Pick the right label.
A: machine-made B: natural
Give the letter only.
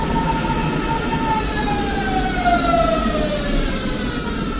B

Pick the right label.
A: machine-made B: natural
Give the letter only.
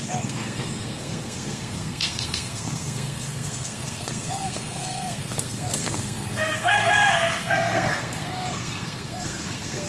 A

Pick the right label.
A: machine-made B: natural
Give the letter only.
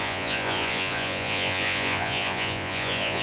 A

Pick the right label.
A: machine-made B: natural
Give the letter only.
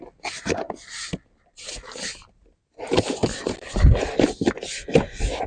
B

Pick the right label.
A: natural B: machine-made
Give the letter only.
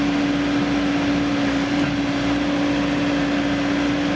A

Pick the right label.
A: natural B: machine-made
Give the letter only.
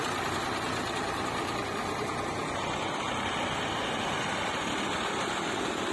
A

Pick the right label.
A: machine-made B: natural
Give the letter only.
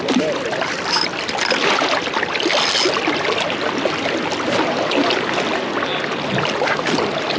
B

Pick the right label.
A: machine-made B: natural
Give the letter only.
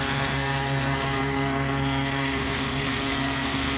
A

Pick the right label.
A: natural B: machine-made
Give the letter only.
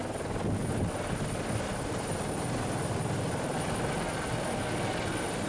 A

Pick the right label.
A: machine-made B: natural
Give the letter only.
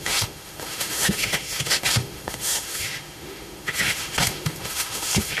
A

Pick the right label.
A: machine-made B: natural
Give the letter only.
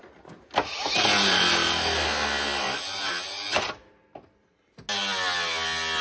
B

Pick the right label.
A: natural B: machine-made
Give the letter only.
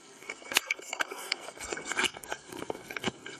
B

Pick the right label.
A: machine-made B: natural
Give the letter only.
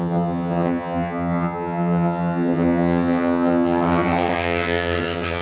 A